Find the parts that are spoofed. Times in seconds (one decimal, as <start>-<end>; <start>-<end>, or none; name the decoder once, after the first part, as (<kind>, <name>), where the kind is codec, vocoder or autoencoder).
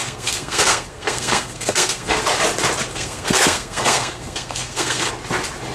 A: 0.0-2.2 (codec, SNAC); 2.9-5.1